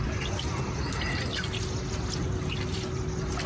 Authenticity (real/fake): real